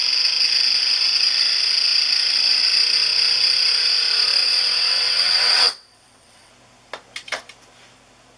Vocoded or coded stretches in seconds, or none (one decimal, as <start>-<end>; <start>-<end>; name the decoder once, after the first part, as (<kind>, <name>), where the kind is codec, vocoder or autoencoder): 4.4-6.5 (vocoder, WaveNeXt)